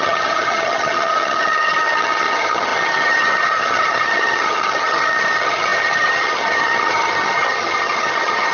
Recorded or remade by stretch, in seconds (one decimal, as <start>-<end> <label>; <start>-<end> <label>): 0.0-8.5 remade